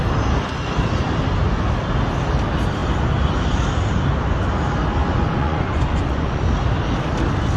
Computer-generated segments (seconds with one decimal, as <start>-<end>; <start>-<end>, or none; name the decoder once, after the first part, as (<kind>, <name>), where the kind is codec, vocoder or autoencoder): 5.0-6.4 (vocoder, Vocos)